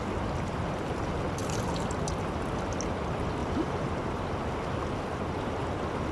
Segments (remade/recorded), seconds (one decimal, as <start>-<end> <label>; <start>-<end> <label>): 0.0-3.4 recorded; 3.4-4.3 remade; 4.3-6.1 recorded